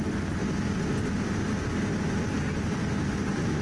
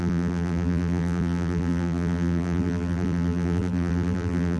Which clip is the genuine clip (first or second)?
first